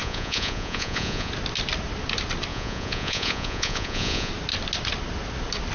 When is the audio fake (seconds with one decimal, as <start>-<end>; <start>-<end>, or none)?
0.0-1.3; 2.5-4.3